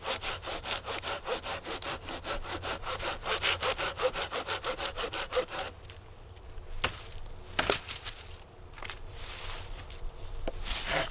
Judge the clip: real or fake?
fake